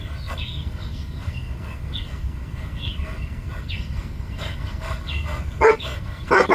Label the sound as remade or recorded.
remade